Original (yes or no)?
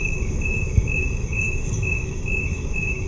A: no